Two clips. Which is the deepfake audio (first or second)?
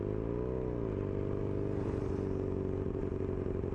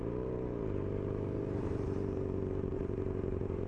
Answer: second